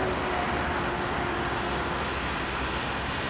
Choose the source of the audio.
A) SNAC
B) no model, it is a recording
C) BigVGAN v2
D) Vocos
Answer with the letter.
B